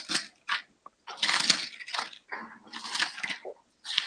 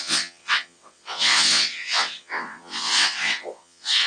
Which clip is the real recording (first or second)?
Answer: first